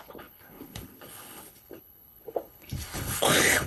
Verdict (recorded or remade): remade